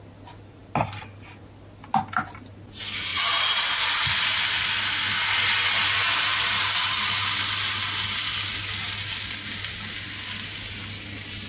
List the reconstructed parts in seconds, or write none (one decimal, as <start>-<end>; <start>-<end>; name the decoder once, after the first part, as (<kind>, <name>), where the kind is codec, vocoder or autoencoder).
3.1-4.4 (vocoder, BigVGAN v2)